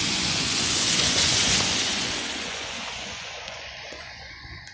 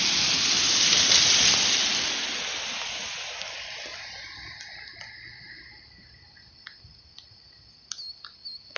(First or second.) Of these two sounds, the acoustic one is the second